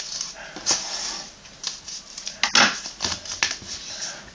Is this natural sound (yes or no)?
yes